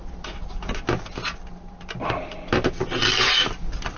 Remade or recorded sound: recorded